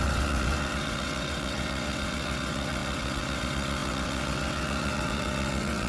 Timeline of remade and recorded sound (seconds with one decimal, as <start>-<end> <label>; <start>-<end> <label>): 0.0-5.9 remade